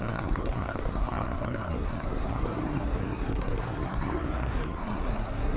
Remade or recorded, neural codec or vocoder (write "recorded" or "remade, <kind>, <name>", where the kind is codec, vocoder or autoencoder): remade, codec, SNAC